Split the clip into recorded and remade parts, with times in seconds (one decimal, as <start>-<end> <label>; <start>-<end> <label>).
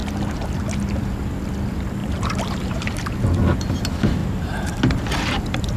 0.0-0.6 remade; 0.6-2.0 recorded; 2.0-2.9 remade; 2.9-4.2 recorded; 4.2-4.7 remade; 4.7-5.8 recorded